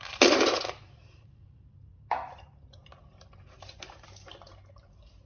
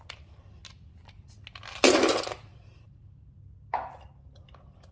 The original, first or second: second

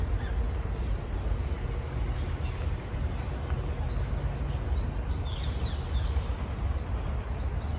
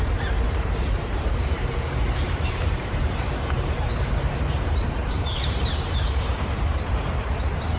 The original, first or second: first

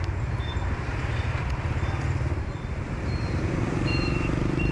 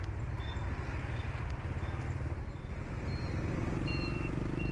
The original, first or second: second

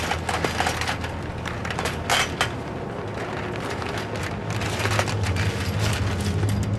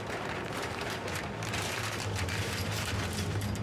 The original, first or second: first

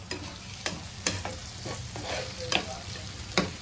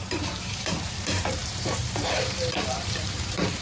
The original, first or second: first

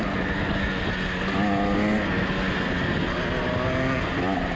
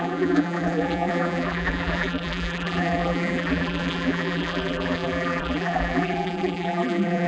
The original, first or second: first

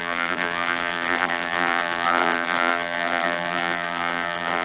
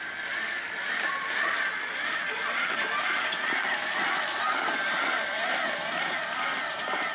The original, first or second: second